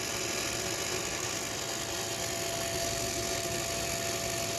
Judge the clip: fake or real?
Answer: real